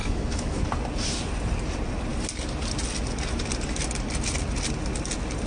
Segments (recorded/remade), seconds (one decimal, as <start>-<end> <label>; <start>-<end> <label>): 0.0-0.6 remade; 0.6-5.5 recorded